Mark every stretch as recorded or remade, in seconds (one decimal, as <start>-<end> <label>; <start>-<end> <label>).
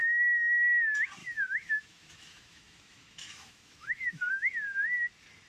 0.0-0.6 remade; 0.6-1.2 recorded; 1.2-4.5 remade; 4.5-5.5 recorded